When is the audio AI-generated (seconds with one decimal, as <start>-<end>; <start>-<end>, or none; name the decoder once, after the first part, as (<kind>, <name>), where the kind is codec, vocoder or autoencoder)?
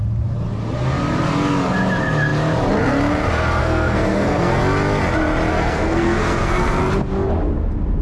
3.6-4.6 (codec, SNAC); 5.5-6.8